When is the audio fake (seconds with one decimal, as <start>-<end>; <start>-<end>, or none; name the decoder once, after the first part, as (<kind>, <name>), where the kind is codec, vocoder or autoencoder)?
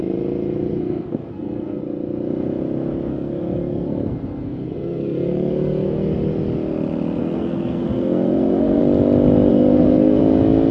0.7-1.8 (codec, SNAC); 3.1-6.3; 7.2-8.8; 9.5-10.2